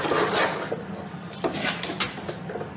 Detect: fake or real real